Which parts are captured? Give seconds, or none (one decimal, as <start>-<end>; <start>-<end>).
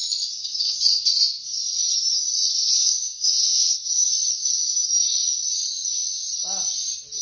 0.0-2.5; 4.1-7.2